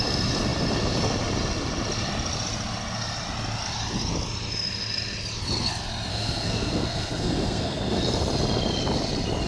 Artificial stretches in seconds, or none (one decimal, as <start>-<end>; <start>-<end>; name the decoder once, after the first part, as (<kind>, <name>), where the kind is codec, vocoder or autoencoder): 6.1-8.0 (codec, SNAC)